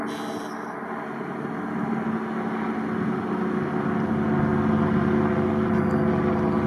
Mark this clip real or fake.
real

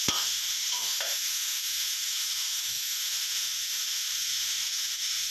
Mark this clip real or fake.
fake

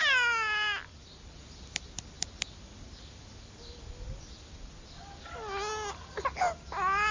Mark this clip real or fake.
real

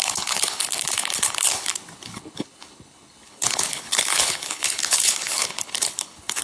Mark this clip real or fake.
fake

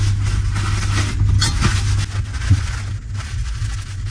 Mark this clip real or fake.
real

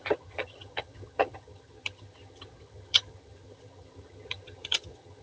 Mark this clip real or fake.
fake